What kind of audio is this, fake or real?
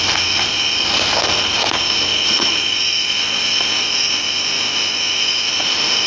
real